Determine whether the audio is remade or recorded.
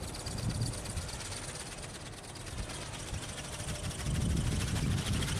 recorded